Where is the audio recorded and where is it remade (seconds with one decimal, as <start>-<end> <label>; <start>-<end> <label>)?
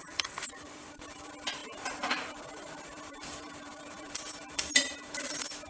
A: 0.0-5.7 remade